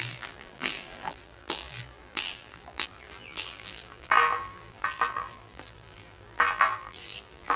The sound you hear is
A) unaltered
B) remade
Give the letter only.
B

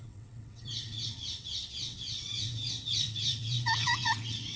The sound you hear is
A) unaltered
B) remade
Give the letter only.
B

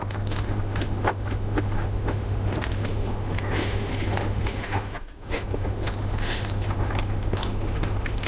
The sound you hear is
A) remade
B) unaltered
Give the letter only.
A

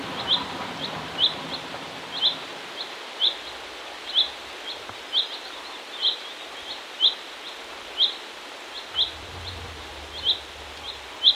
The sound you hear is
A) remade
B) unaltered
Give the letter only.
B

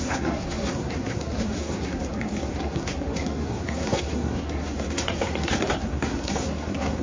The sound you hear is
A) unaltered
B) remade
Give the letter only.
B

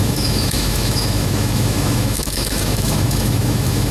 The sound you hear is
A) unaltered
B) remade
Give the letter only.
B